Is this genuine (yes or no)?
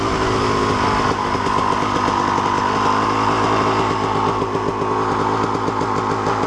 yes